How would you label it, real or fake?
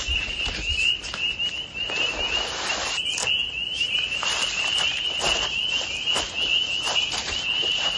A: real